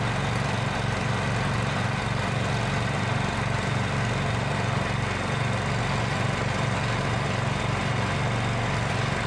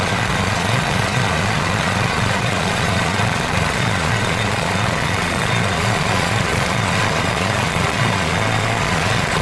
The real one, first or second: first